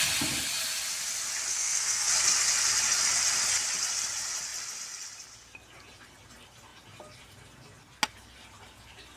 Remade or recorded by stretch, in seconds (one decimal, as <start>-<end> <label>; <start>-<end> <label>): 0.0-1.5 recorded; 1.5-2.1 remade; 2.1-9.2 recorded